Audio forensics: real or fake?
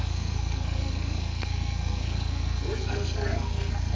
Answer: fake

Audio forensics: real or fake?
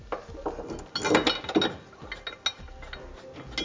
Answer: real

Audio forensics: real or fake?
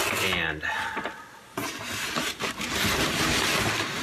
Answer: real